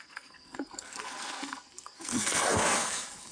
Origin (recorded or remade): remade